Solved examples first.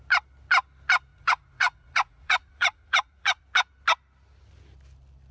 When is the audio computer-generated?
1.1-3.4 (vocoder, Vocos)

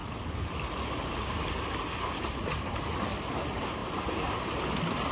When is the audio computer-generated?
none

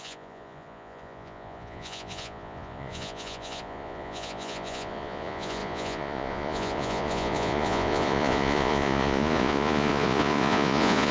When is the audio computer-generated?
0.0-11.1 (vocoder, Vocos)

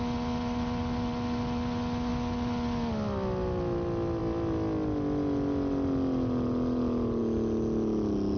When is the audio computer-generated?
none

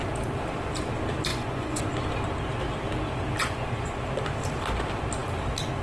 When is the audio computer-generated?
1.3-1.8 (vocoder, Vocos); 3.4-4.0

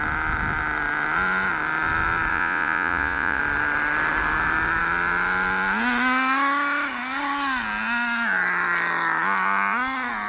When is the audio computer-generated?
2.3-3.4 (vocoder, Vocos)

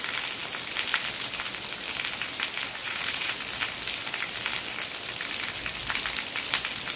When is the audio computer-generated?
2.8-3.4 (vocoder, Vocos)